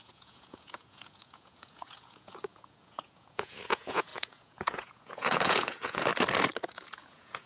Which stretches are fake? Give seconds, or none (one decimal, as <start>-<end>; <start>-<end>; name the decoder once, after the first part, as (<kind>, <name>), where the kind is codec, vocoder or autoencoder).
0.0-6.1 (vocoder, Vocos); 6.6-7.5